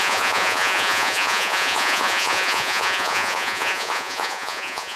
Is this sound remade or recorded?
remade